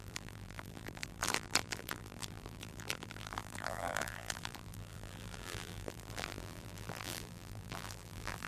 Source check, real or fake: fake